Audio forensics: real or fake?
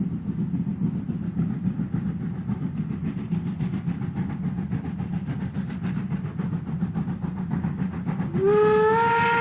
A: real